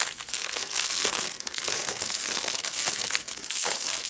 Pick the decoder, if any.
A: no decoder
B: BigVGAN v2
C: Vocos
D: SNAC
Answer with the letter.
D